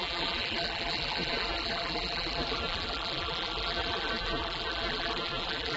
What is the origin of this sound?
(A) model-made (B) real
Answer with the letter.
A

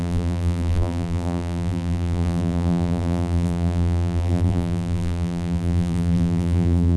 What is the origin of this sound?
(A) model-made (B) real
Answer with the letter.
A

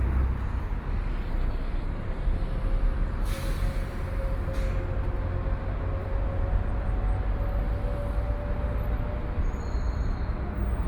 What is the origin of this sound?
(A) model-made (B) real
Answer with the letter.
B